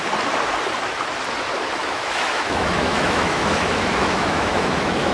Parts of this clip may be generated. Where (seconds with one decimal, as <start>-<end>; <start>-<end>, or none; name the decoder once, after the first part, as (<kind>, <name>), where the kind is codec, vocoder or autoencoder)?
1.8-5.1 (autoencoder, DAC-VAE)